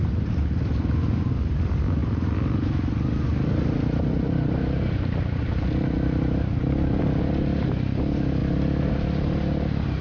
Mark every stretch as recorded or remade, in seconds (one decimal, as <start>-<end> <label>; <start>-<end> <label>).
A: 0.0-10.0 recorded

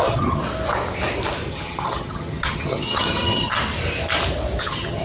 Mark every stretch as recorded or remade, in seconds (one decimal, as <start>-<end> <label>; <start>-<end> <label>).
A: 0.0-0.4 remade; 0.4-1.5 recorded; 1.5-3.6 remade; 3.6-4.6 recorded; 4.6-5.0 remade

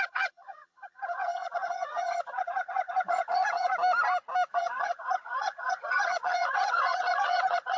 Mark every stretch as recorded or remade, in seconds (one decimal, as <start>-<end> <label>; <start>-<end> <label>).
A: 0.0-3.7 remade; 3.7-4.5 recorded; 4.5-7.8 remade

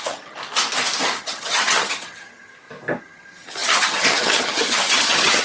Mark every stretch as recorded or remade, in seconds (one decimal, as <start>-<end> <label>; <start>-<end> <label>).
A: 0.0-0.4 remade; 0.4-1.2 recorded; 1.2-2.5 remade; 2.5-3.0 recorded; 3.0-5.4 remade

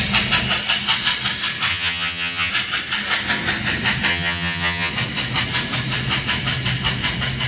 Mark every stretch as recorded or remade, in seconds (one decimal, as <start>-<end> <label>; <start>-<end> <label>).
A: 0.0-1.7 recorded; 1.7-2.5 remade; 2.5-4.1 recorded; 4.1-4.9 remade; 4.9-7.5 recorded

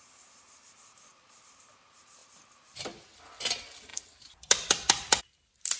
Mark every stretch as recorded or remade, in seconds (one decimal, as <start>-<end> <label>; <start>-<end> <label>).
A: 0.0-5.8 recorded

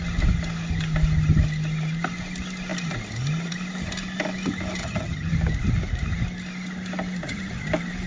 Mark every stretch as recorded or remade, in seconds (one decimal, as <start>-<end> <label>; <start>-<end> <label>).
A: 0.0-4.8 recorded; 4.8-5.3 remade; 5.3-8.1 recorded

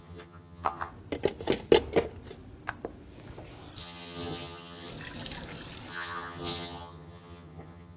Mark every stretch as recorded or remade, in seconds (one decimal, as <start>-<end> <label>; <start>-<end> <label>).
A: 0.0-0.9 remade; 0.9-3.8 recorded; 3.8-4.9 remade; 4.9-5.9 recorded; 5.9-8.0 remade